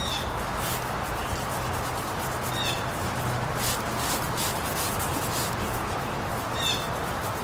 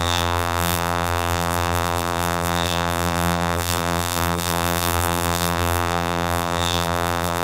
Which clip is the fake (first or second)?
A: second